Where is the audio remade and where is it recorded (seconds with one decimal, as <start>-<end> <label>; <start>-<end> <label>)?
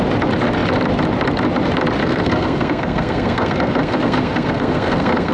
0.0-2.0 recorded; 2.0-5.3 remade